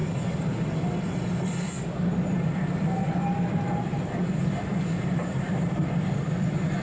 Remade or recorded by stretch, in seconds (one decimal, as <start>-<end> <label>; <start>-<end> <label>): 0.0-3.9 remade; 3.9-4.4 recorded; 4.4-6.8 remade